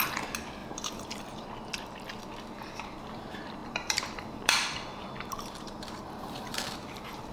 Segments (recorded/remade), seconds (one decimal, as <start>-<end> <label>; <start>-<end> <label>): 0.0-0.6 recorded; 0.6-1.2 remade; 1.2-3.6 recorded; 3.6-7.3 remade